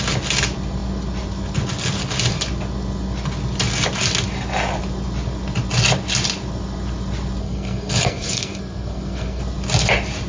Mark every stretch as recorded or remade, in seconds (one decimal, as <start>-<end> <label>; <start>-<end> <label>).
0.0-7.4 recorded; 7.4-9.4 remade; 9.4-10.3 recorded